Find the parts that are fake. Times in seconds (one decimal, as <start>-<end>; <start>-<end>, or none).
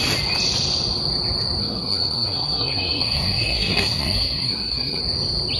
1.6-5.0